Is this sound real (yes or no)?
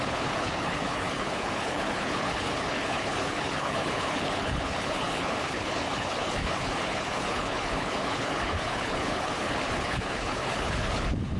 no